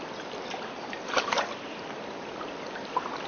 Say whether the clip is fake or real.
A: real